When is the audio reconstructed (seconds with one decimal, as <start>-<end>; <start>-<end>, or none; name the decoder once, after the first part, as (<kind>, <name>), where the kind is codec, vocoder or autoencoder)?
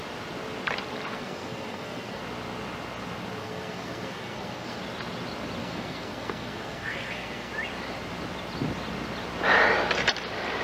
1.1-2.2 (codec, SNAC); 3.4-4.8; 5.6-7.5